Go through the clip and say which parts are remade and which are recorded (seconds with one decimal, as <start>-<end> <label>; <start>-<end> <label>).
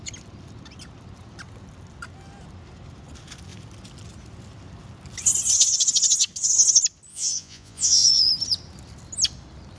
0.0-7.1 recorded; 7.1-8.3 remade; 8.3-9.8 recorded